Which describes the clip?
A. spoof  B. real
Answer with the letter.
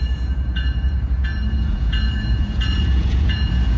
A